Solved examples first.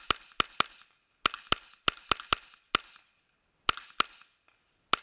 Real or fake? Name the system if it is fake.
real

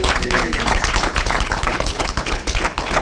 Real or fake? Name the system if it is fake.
fake, codec, HILCodec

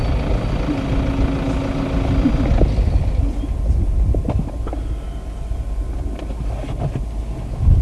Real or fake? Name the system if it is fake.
real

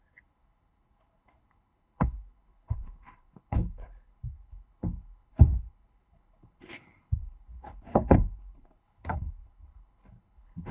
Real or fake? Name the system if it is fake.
fake, codec, HILCodec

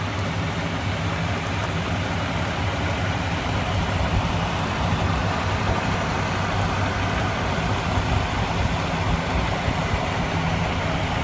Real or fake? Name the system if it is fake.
real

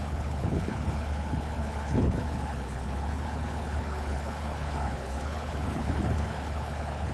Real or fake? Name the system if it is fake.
fake, codec, HILCodec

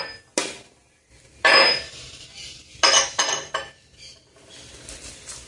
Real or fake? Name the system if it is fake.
real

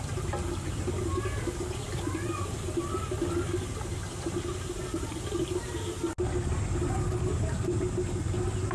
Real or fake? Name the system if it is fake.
real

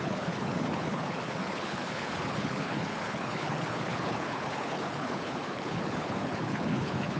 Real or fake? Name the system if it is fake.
fake, codec, HILCodec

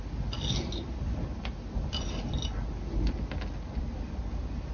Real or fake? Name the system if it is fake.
real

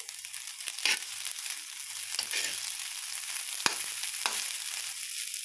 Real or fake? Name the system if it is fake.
real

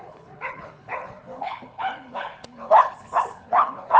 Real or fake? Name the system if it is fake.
fake, codec, HILCodec